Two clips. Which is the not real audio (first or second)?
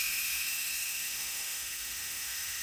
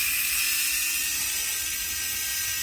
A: first